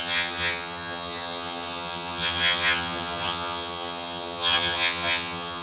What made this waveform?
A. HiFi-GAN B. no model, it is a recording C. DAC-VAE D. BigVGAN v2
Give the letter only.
A